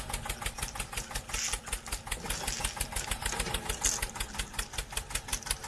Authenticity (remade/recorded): recorded